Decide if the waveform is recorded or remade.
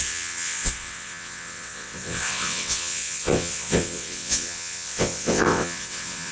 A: remade